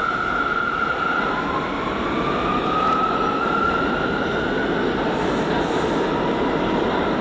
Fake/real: real